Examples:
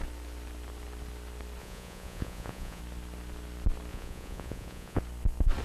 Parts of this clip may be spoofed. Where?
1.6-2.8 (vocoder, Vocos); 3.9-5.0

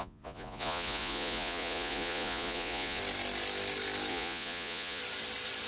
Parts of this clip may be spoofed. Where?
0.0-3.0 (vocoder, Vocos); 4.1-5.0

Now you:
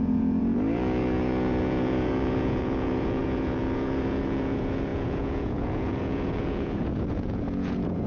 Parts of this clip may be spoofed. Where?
0.0-8.1 (vocoder, Vocos)

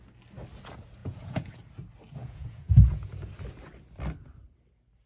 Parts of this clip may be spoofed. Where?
1.0-1.5 (vocoder, Vocos); 2.2-3.1

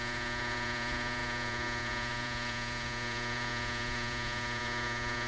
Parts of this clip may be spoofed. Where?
0.0-5.3 (vocoder, Vocos)

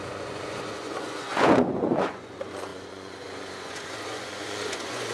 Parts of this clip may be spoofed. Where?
0.0-5.1 (vocoder, Vocos)

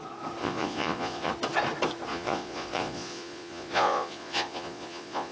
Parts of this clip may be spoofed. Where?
0.4-1.3 (vocoder, Vocos); 2.1-5.3